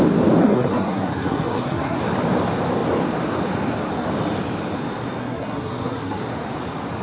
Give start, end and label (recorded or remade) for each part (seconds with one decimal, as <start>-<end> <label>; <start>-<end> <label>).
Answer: 0.0-0.4 recorded; 0.4-2.0 remade; 2.0-5.2 recorded; 5.2-6.2 remade; 6.2-7.0 recorded